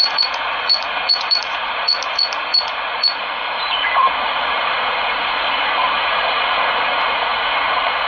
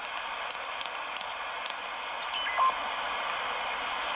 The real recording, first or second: second